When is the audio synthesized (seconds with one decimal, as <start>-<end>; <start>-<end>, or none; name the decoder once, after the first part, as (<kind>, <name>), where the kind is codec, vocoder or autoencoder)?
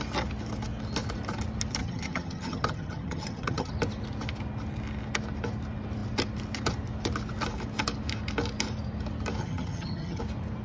1.8-3.7 (vocoder, HiFi-GAN); 9.4-10.2